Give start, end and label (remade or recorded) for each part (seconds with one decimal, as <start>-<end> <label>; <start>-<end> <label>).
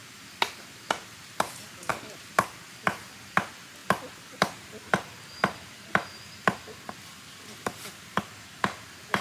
0.0-3.8 recorded; 3.8-8.2 remade; 8.2-9.2 recorded